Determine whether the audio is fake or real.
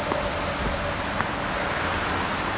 real